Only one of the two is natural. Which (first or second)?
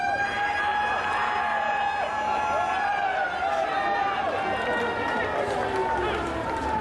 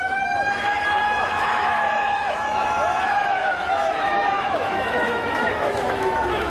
first